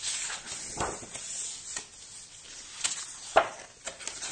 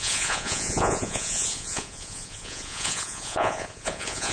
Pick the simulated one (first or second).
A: second